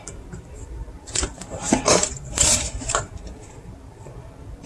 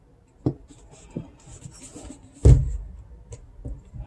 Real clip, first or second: second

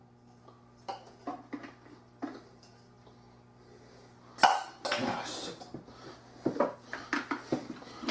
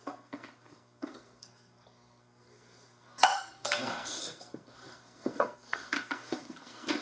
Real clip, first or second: first